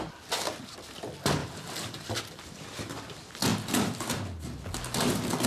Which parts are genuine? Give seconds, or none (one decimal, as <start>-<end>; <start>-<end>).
0.0-1.4; 2.6-5.5